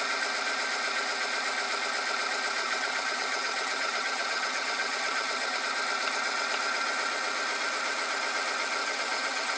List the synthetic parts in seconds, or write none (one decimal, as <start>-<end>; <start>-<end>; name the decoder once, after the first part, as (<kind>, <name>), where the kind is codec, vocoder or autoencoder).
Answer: 2.6-5.6 (vocoder, HiFi-GAN); 8.8-9.6